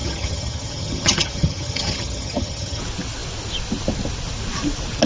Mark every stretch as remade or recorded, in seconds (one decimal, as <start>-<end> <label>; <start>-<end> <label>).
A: 0.0-2.8 remade; 2.8-5.1 recorded